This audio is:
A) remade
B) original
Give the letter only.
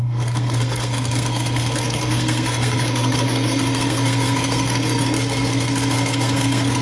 A